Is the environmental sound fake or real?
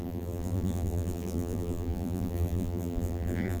fake